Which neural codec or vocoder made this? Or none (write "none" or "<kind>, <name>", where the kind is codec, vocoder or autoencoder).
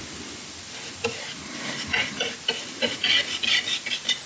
none